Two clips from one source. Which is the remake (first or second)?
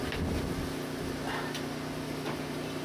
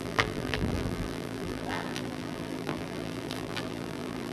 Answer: second